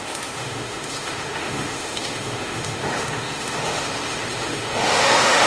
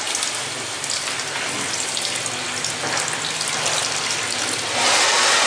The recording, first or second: second